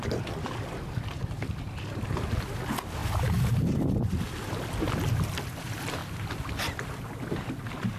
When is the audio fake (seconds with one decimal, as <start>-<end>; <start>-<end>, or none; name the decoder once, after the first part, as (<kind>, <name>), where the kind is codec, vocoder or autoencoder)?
3.0-3.6 (vocoder, BigVGAN v2)